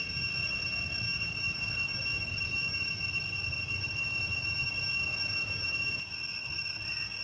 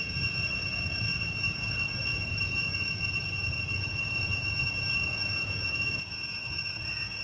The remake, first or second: second